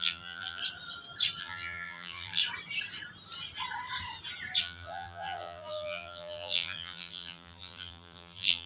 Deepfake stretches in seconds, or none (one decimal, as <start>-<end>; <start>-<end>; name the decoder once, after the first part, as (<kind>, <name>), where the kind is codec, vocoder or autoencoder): 0.0-0.6 (vocoder, BigVGAN v2); 1.4-2.4; 4.6-8.7